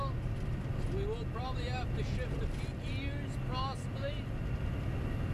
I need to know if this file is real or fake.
real